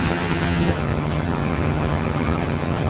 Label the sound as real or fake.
fake